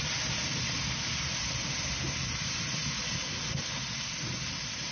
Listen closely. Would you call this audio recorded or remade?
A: recorded